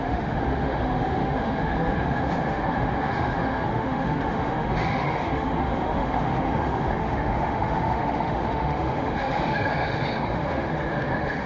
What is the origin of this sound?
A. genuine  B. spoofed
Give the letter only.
B